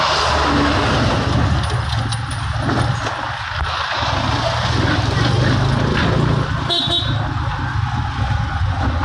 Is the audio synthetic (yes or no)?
no